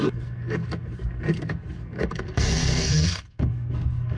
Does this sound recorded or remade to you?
remade